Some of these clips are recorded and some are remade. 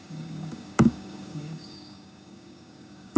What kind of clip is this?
remade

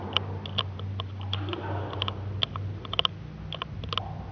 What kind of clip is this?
recorded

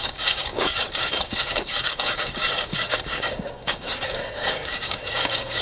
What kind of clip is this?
remade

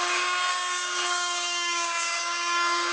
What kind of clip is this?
remade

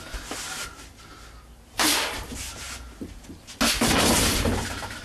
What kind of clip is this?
recorded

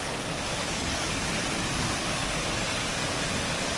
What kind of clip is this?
remade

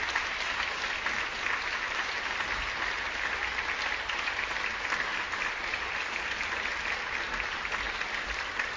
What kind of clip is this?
recorded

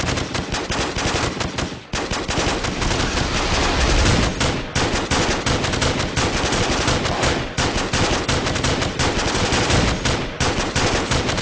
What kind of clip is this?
recorded